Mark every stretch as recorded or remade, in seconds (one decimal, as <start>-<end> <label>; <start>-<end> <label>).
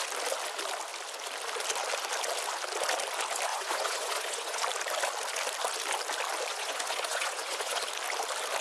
0.0-3.5 recorded; 3.5-4.6 remade; 4.6-6.5 recorded; 6.5-7.8 remade; 7.8-8.6 recorded